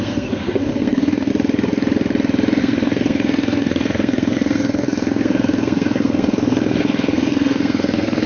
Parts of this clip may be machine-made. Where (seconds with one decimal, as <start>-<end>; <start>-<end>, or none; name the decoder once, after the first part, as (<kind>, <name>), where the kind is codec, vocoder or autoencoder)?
0.0-1.3 (codec, SNAC); 2.6-8.3